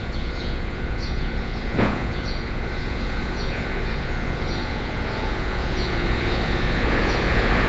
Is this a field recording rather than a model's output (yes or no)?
no